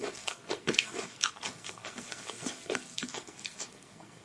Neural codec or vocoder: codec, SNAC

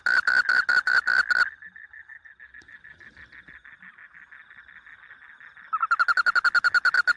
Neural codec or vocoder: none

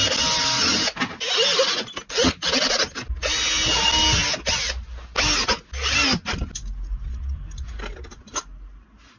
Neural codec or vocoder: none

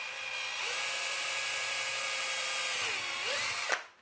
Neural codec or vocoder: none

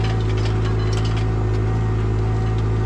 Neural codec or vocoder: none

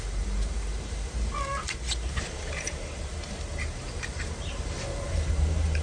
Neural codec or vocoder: vocoder, BigVGAN v2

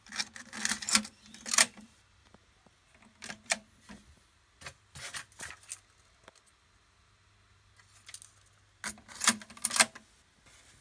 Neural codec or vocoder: none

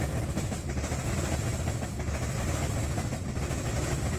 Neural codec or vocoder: none